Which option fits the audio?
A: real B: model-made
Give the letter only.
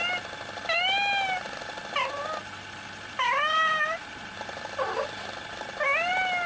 A